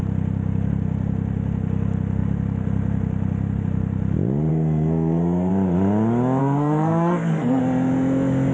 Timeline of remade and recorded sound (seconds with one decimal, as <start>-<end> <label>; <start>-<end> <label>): 0.0-4.5 recorded; 4.5-5.5 remade; 5.5-6.4 recorded; 6.4-7.6 remade; 7.6-8.5 recorded